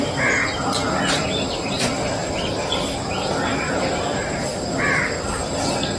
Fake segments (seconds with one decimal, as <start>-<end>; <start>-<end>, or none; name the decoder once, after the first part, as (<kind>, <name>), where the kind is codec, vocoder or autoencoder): 2.2-3.9 (vocoder, BigVGAN v2); 4.5-5.2